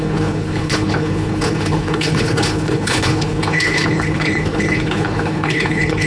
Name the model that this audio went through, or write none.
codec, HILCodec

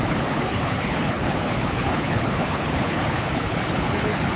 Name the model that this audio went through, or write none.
codec, HILCodec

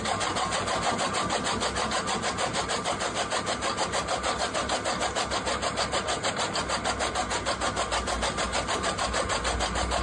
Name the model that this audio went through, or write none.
none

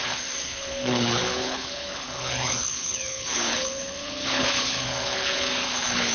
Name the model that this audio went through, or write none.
codec, HILCodec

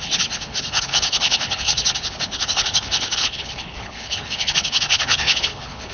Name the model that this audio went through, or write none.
codec, HILCodec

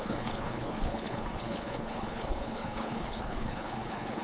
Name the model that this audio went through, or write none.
codec, HILCodec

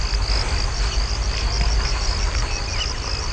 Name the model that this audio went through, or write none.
none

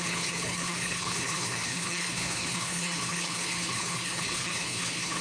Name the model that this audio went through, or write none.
codec, HILCodec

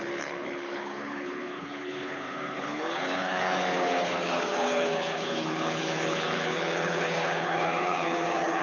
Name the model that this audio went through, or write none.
codec, HILCodec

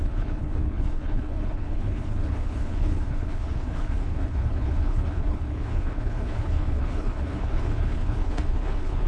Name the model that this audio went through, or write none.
codec, HILCodec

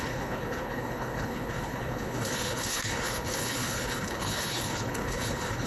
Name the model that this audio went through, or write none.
codec, HILCodec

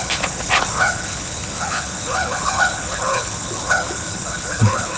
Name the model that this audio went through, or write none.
codec, HILCodec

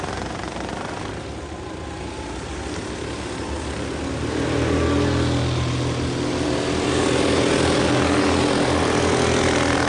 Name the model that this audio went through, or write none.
none